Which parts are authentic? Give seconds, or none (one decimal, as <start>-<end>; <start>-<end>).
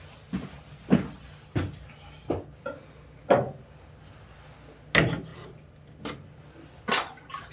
0.0-5.3; 6.0-7.5